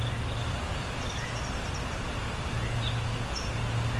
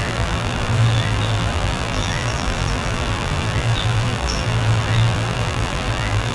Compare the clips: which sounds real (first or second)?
first